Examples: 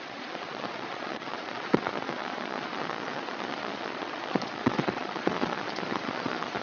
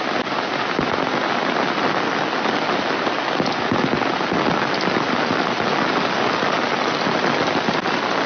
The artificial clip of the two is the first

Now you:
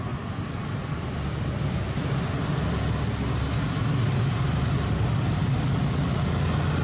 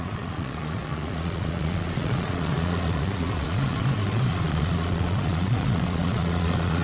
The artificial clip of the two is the second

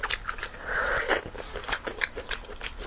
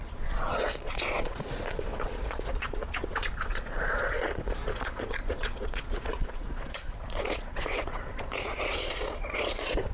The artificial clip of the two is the second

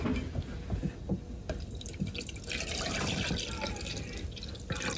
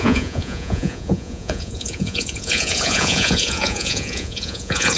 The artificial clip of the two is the second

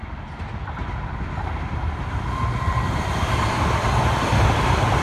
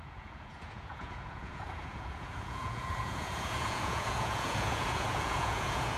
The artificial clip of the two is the second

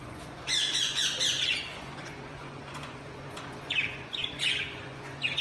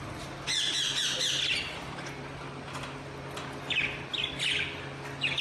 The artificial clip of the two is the first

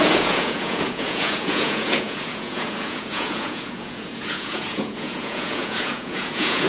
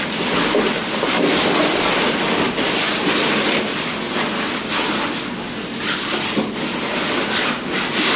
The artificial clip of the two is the first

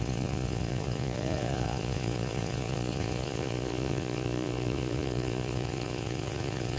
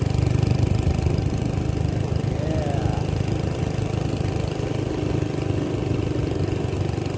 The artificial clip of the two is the first